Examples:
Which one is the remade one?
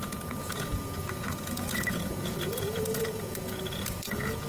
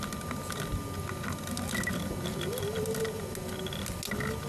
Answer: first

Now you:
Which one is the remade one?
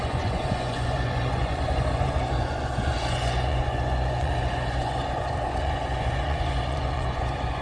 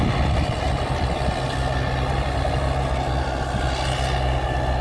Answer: first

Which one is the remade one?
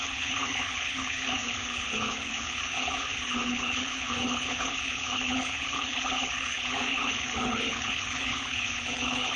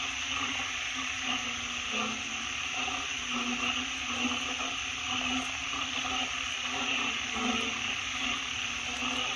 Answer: first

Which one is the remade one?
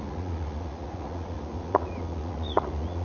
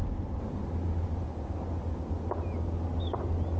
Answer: first